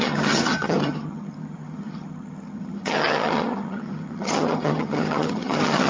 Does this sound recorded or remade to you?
remade